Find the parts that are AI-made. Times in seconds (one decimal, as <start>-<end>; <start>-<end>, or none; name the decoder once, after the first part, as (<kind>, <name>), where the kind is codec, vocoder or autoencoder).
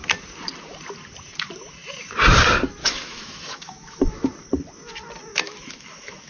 2.8-4.1 (autoencoder, DAC-VAE); 5.3-6.3